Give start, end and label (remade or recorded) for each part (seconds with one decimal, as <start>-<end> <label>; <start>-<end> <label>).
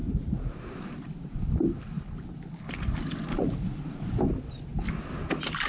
0.0-0.5 remade; 0.5-3.3 recorded; 3.3-4.2 remade; 4.2-5.7 recorded